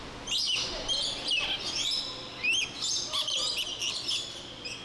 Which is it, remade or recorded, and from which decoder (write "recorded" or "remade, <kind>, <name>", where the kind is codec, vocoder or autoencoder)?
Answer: recorded